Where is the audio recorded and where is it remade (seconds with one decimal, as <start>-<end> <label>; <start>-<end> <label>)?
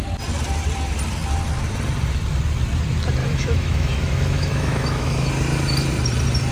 0.0-3.2 recorded; 3.2-5.3 remade; 5.3-6.5 recorded